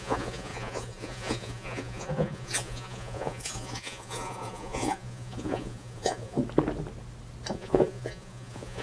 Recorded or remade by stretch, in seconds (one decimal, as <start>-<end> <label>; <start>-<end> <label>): 0.0-6.4 remade; 6.4-7.5 recorded; 7.5-8.8 remade